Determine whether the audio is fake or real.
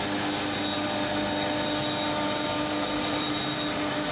real